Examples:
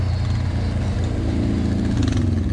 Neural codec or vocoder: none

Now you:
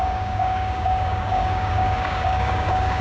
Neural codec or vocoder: codec, DAC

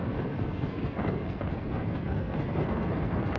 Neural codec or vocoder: codec, SNAC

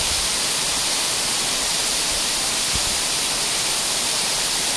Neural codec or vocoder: none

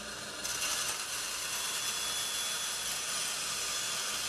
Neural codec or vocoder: none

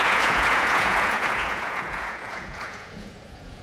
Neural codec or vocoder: vocoder, Vocos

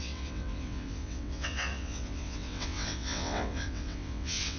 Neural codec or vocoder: vocoder, WaveNeXt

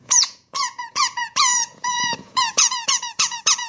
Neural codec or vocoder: vocoder, Vocos